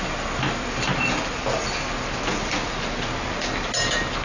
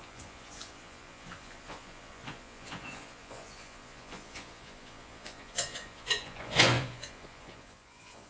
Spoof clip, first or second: second